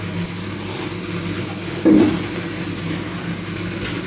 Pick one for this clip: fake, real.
real